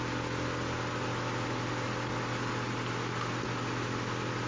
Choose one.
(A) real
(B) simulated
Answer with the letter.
A